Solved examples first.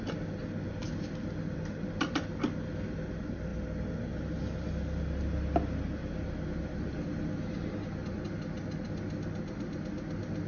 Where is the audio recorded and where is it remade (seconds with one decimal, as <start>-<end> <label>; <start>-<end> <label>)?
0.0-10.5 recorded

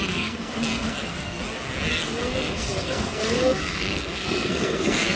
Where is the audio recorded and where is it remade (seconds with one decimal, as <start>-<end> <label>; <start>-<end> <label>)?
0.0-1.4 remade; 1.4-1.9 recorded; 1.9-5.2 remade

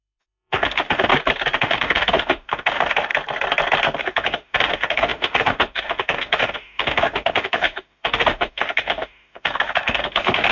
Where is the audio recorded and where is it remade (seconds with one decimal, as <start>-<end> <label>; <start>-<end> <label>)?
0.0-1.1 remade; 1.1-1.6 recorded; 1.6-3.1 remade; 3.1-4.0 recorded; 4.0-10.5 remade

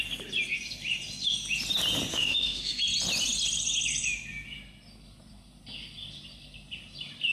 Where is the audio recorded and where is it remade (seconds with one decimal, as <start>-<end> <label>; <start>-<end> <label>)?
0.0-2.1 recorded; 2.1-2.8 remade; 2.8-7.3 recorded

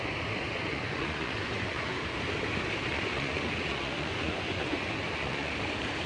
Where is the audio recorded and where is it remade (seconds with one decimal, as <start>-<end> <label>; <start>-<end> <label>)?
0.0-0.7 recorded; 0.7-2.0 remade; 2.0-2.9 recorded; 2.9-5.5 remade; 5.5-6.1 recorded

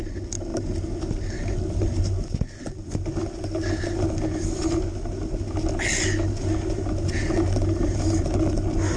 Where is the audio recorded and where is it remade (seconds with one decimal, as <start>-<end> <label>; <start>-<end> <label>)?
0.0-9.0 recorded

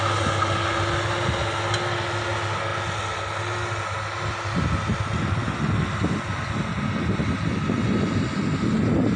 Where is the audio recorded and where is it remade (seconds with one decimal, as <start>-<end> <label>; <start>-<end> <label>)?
0.0-9.2 recorded

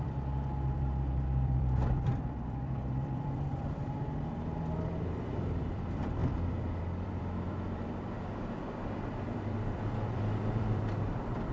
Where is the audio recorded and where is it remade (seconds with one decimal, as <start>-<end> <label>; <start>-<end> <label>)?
0.0-11.5 remade